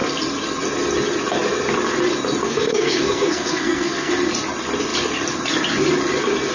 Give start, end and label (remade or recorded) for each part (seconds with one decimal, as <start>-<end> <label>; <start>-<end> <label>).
0.0-2.4 recorded; 2.4-4.1 remade; 4.1-6.5 recorded